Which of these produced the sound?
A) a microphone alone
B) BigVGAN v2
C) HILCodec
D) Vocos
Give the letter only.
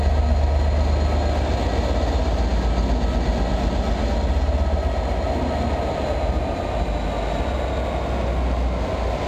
A